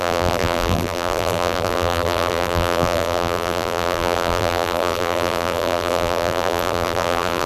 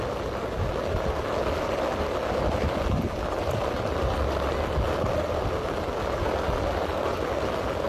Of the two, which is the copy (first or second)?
first